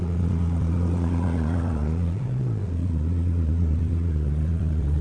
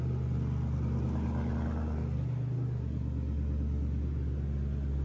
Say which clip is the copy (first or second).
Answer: first